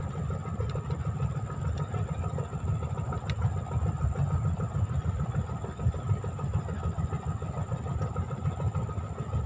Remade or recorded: recorded